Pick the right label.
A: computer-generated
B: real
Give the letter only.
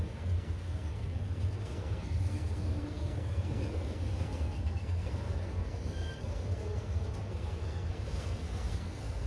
A